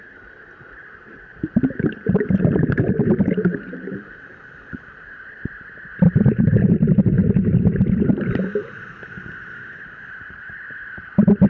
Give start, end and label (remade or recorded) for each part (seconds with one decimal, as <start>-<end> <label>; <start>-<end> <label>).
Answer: 0.0-1.3 recorded; 1.3-5.1 remade; 5.1-11.5 recorded